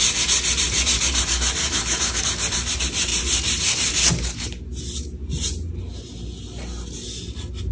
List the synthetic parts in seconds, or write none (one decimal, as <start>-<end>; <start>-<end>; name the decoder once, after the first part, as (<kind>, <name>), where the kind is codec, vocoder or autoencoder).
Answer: 1.6-2.2 (autoencoder, DAC-VAE)